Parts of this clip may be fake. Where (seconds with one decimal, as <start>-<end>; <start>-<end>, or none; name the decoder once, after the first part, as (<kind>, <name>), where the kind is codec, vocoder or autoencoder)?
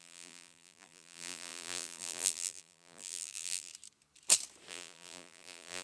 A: 0.0-3.7 (vocoder, BigVGAN v2); 4.7-5.8